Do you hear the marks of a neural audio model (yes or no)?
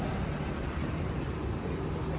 yes